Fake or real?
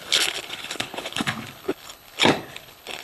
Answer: fake